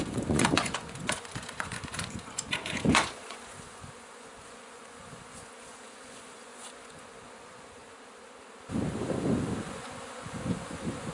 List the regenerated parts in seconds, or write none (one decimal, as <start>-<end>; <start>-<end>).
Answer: 0.0-7.8; 9.6-11.1